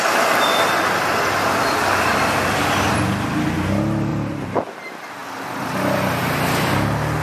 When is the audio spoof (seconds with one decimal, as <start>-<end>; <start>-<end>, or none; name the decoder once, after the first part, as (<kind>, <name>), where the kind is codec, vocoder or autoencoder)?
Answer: 4.1-4.6 (vocoder, BigVGAN v2); 5.2-6.2